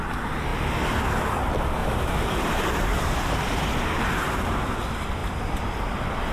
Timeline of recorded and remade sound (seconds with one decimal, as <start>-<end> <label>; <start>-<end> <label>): 0.0-1.8 recorded; 1.8-3.6 remade; 3.6-6.3 recorded